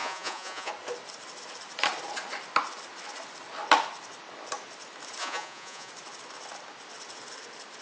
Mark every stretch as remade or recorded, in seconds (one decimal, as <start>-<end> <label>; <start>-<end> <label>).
0.0-0.7 remade; 0.7-5.2 recorded; 5.2-5.9 remade; 5.9-7.8 recorded